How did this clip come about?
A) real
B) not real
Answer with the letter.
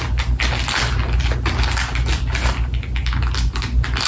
A